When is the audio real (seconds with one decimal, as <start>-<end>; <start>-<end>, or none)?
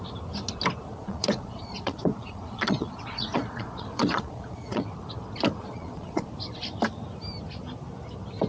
0.0-0.8; 4.8-5.6; 6.3-8.5